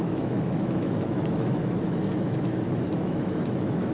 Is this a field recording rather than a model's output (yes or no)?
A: no